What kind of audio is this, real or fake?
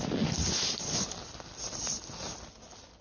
real